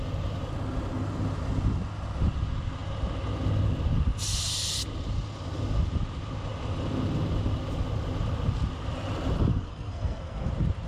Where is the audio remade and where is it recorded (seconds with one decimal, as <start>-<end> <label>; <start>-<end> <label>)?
0.0-9.5 recorded; 9.5-10.5 remade; 10.5-10.9 recorded

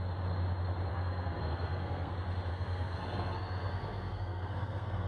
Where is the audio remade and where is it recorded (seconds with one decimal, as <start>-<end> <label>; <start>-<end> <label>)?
0.0-0.9 recorded; 0.9-2.1 remade; 2.1-2.5 recorded; 2.5-5.1 remade